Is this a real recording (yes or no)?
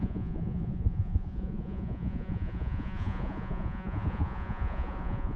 no